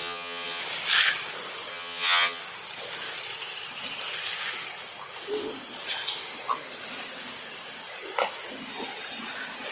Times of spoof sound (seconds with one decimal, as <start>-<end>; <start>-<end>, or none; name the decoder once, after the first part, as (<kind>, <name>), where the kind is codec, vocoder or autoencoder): 0.0-0.6 (vocoder, HiFi-GAN); 1.7-2.4